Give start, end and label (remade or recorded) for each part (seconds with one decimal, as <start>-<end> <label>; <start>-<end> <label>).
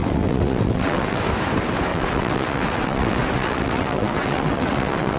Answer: 0.0-1.2 remade; 1.2-1.9 recorded; 1.9-5.2 remade